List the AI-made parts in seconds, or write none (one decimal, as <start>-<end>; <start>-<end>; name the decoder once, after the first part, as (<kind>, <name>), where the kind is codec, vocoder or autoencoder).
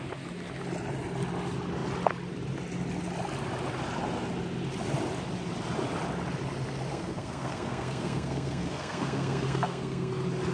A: 6.9-10.1 (codec, SNAC)